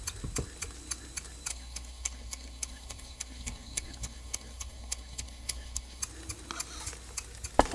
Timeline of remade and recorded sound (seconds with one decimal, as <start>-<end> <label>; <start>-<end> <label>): 0.0-1.5 recorded; 1.5-6.0 remade; 6.0-7.7 recorded